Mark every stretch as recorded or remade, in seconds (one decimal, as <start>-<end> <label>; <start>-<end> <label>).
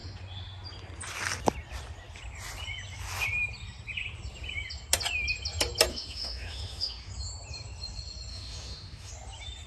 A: 0.0-5.9 recorded; 5.9-7.1 remade; 7.1-8.3 recorded; 8.3-9.1 remade; 9.1-9.7 recorded